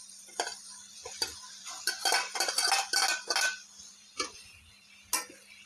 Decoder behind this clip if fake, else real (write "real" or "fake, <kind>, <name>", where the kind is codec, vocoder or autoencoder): real